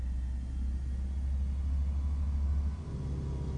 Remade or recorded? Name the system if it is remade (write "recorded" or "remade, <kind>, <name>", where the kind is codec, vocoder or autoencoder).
recorded